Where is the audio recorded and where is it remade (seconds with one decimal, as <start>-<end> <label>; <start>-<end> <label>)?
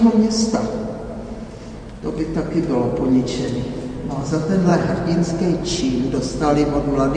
0.0-4.7 recorded; 4.7-6.4 remade; 6.4-7.2 recorded